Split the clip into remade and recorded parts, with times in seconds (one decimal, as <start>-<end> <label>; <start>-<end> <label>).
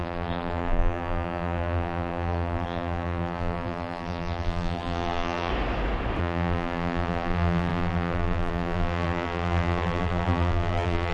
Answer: 0.0-5.5 remade; 5.5-6.2 recorded; 6.2-11.1 remade